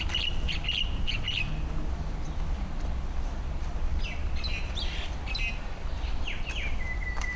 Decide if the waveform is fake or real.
real